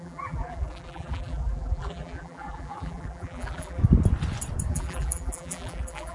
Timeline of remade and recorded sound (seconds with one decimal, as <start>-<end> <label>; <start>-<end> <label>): 0.0-3.8 remade; 3.8-4.7 recorded; 4.7-6.1 remade